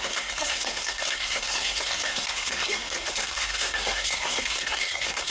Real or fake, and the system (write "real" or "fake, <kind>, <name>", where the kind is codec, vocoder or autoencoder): fake, codec, SNAC